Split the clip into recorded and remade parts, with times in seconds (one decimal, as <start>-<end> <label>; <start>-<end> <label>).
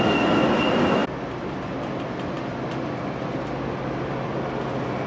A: 0.0-5.1 recorded